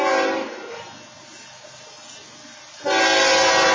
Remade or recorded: recorded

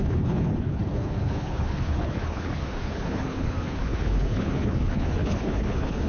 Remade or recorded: remade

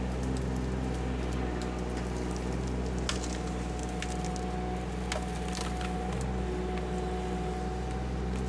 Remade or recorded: recorded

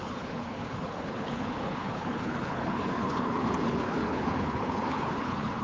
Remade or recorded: remade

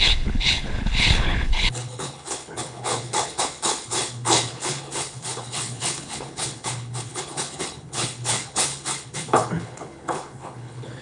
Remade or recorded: remade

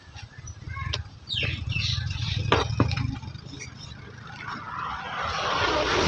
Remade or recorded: recorded